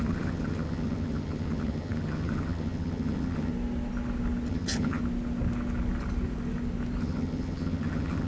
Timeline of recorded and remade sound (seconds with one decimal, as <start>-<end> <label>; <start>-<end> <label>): 0.0-3.5 remade; 3.5-4.5 recorded; 4.5-5.0 remade; 5.0-7.0 recorded; 7.0-8.3 remade